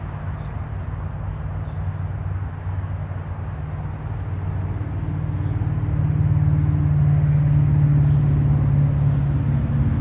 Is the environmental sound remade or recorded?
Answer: recorded